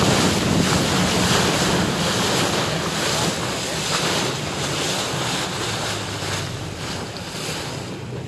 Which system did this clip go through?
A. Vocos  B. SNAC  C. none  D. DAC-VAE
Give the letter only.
C